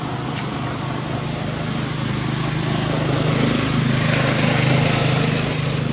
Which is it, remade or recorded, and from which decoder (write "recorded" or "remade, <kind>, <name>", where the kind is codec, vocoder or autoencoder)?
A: recorded